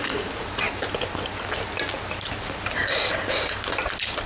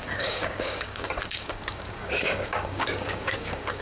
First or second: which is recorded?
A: first